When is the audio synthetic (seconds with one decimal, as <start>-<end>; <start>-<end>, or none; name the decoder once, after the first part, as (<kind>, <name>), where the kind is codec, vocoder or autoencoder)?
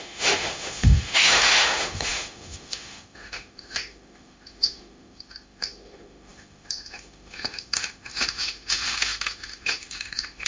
0.0-10.5 (autoencoder, DAC-VAE)